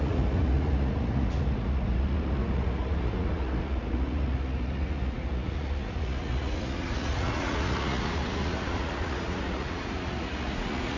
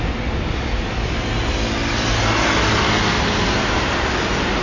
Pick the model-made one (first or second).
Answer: first